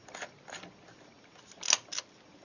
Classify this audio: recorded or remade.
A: recorded